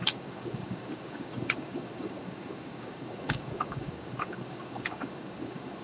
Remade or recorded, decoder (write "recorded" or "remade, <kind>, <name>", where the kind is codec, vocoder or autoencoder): remade, codec, DAC